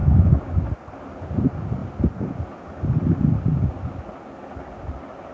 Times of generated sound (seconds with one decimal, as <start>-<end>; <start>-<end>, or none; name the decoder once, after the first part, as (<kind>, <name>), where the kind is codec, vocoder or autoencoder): 0.0-0.6 (autoencoder, DAC-VAE)